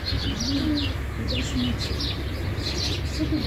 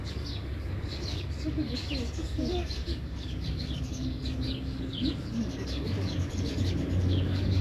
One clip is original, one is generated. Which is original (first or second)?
first